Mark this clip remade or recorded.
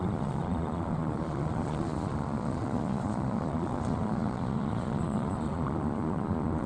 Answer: remade